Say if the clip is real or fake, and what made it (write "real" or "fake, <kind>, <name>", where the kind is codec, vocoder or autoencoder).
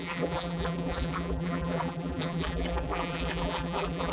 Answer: fake, vocoder, BigVGAN v2